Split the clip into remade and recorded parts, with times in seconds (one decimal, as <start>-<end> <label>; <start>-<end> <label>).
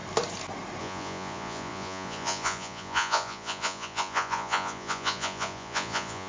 0.0-0.8 recorded; 0.8-6.3 remade